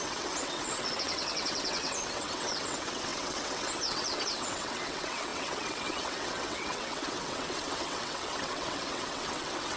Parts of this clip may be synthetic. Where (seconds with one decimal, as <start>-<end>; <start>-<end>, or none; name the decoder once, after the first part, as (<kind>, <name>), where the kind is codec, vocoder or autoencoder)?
0.0-9.8 (vocoder, WaveNeXt)